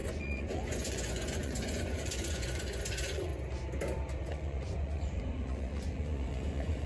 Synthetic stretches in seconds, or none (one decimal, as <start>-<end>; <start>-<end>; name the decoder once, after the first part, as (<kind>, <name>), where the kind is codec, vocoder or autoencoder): 0.0-3.3 (vocoder, Vocos); 4.2-6.9